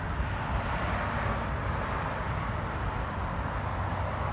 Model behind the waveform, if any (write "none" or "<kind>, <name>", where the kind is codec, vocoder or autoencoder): none